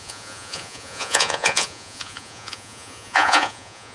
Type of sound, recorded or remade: remade